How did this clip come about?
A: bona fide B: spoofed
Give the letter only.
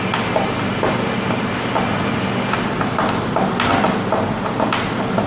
A